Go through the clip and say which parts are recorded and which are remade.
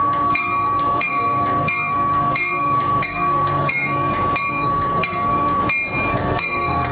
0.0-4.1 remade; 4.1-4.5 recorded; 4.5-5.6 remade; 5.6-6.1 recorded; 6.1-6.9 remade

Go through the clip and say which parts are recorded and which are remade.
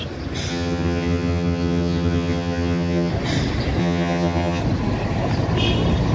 0.0-0.5 recorded; 0.5-3.1 remade; 3.1-3.8 recorded; 3.8-4.6 remade; 4.6-6.1 recorded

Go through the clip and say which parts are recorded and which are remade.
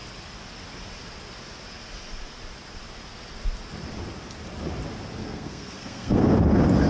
0.0-5.2 recorded; 5.2-6.2 remade; 6.2-6.9 recorded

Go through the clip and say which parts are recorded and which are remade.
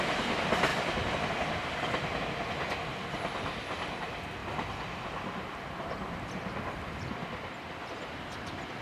0.0-8.8 recorded